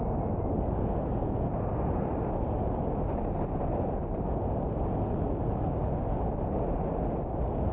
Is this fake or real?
real